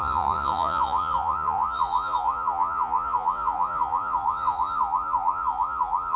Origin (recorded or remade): remade